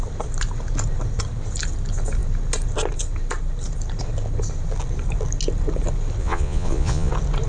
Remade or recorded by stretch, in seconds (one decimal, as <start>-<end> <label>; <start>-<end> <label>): 0.0-6.2 recorded; 6.2-7.1 remade; 7.1-7.5 recorded